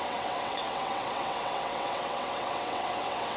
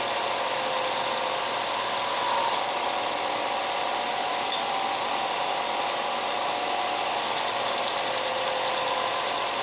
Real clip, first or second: second